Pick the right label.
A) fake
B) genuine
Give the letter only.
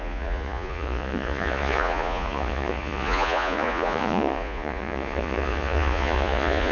A